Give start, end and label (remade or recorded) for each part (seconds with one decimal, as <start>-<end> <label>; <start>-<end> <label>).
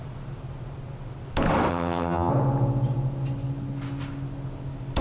0.0-1.7 recorded; 1.7-2.3 remade; 2.3-5.0 recorded